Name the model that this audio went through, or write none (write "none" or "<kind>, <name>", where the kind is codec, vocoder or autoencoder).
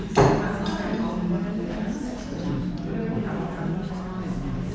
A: none